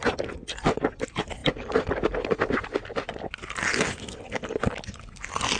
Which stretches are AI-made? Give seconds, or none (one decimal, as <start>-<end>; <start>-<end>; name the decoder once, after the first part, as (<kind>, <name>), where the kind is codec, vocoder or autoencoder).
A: none